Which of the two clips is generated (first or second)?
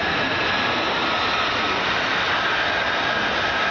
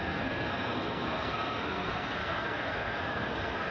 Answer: second